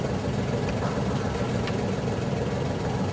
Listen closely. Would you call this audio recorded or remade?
recorded